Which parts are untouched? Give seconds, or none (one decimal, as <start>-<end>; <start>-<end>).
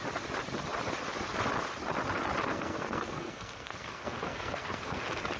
0.0-2.5; 5.0-5.4